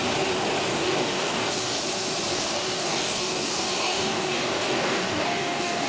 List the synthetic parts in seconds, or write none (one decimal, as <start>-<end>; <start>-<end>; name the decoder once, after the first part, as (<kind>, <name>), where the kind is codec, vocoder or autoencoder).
0.7-1.8 (codec, DAC); 2.3-5.9